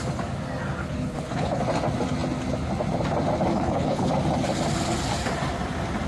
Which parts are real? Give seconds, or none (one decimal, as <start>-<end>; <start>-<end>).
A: 0.0-0.8; 1.6-3.5; 4.1-6.1